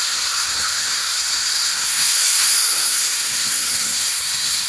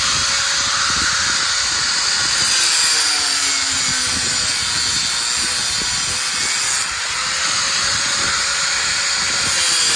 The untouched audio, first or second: second